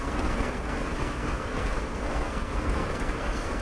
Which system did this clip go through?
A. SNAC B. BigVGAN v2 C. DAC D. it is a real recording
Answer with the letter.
A